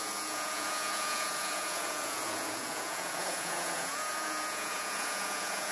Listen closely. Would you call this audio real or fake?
fake